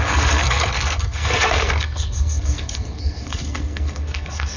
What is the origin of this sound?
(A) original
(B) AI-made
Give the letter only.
B